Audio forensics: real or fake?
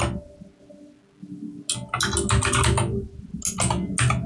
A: real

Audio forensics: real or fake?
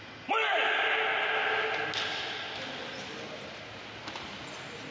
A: real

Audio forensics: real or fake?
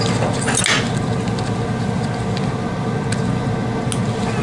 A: real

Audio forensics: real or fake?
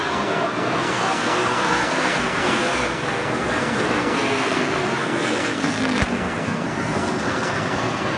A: fake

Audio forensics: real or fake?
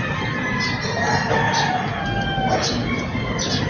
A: real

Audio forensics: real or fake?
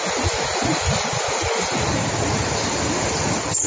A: real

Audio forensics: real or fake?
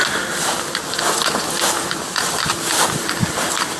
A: real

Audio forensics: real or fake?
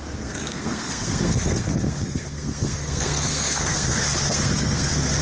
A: fake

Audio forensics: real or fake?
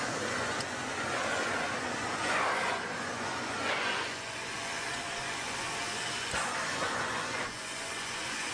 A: fake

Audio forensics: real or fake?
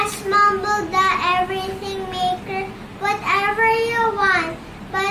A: real